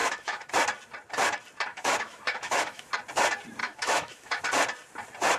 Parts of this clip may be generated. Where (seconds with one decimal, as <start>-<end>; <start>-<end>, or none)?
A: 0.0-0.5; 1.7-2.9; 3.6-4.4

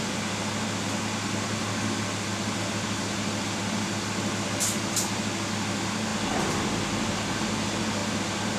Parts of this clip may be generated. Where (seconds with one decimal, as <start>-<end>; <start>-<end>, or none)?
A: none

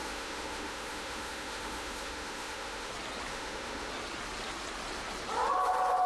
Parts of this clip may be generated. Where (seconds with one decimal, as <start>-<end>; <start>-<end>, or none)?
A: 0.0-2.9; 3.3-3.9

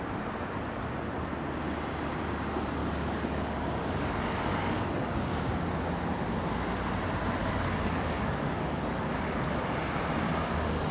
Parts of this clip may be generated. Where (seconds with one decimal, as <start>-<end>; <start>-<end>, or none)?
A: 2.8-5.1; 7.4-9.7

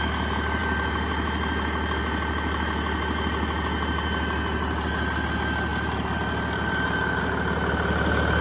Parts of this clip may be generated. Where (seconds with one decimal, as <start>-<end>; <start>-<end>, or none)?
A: none

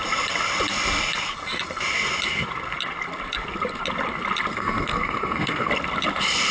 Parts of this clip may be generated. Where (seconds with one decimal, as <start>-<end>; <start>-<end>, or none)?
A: 4.5-5.7

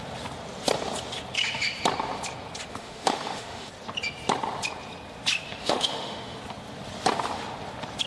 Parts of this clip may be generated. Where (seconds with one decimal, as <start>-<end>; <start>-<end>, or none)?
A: 2.7-3.7; 5.6-6.4